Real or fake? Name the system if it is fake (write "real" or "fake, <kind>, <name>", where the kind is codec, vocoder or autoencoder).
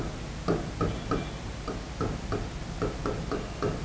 real